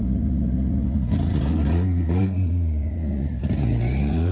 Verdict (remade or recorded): remade